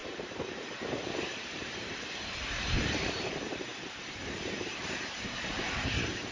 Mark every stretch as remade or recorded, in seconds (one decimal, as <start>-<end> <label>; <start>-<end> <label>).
0.0-6.3 remade